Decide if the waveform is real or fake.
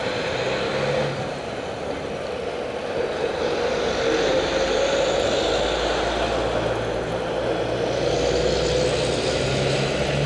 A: real